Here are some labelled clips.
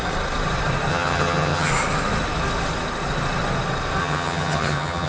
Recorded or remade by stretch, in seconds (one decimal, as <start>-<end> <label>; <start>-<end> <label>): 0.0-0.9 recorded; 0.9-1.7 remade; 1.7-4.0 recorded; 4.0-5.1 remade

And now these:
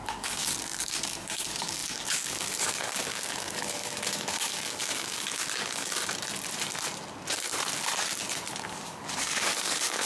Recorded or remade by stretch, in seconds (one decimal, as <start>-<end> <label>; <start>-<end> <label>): 0.0-6.0 remade; 6.0-8.6 recorded; 8.6-10.1 remade

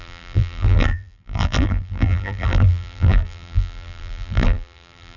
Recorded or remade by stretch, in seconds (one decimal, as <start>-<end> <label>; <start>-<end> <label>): 0.0-5.2 remade